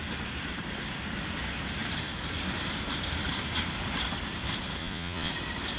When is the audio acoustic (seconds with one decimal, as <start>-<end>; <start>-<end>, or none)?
0.0-4.8; 5.3-5.8